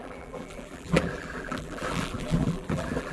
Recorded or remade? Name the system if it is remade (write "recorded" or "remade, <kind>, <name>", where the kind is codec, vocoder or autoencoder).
remade, vocoder, BigVGAN v2